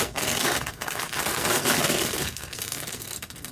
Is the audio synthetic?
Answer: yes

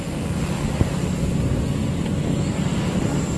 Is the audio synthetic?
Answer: no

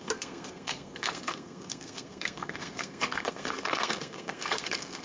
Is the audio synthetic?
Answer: yes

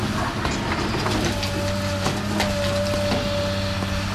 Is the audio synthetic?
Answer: no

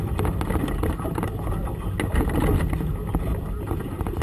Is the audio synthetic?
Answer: no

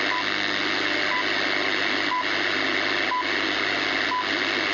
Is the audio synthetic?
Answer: no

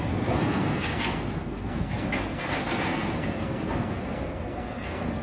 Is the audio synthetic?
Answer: yes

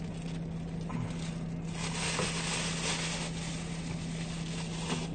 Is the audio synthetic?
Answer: no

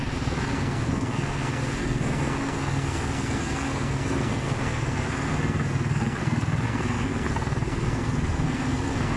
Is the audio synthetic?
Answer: yes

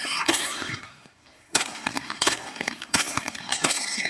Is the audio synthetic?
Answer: yes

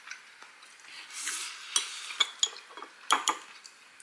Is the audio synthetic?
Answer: no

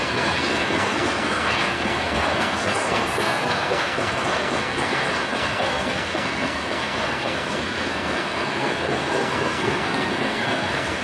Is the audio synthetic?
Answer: yes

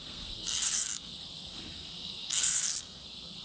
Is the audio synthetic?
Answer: yes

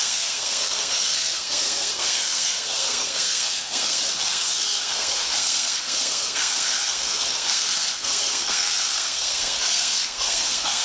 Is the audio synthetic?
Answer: yes